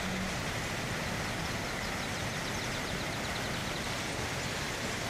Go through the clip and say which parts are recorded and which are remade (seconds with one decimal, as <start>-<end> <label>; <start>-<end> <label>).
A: 0.0-5.1 recorded